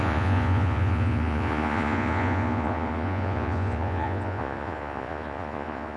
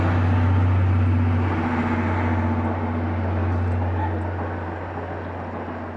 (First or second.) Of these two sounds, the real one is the second